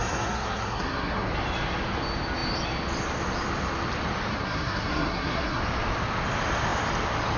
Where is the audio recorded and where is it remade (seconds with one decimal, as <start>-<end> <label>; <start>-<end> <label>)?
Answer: 0.0-1.3 remade; 1.3-4.3 recorded; 4.3-5.6 remade; 5.6-7.4 recorded